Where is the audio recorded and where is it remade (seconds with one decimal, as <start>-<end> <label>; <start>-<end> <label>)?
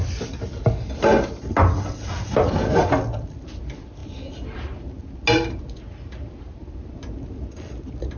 0.0-8.2 recorded